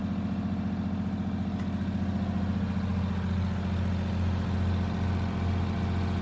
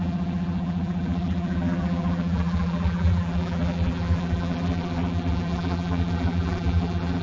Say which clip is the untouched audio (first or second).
first